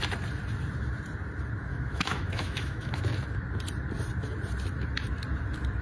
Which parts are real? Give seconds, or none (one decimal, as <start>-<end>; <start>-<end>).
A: 0.0-1.7; 3.0-5.8